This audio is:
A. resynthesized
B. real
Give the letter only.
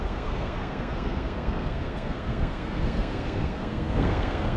A